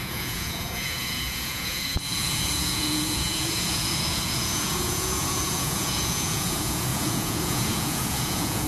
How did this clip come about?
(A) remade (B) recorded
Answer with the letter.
A